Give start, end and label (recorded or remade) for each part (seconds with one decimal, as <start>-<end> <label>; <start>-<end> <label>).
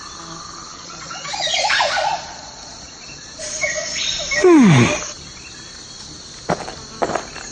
0.0-0.7 recorded; 0.7-4.0 remade; 4.0-7.5 recorded